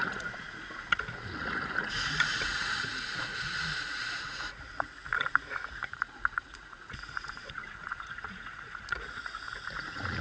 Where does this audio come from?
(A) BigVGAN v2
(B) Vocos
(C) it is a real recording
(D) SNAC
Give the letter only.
B